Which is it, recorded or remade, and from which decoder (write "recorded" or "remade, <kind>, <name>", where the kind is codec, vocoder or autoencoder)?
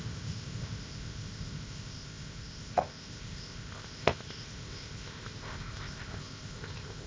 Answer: remade, codec, ZipCodec